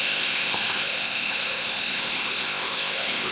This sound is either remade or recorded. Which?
remade